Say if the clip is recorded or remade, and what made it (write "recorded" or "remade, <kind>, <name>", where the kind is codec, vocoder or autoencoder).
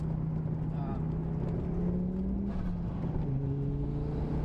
recorded